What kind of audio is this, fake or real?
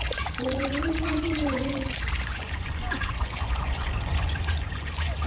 fake